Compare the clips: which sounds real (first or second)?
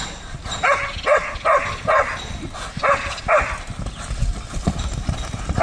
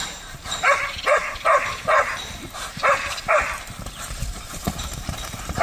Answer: first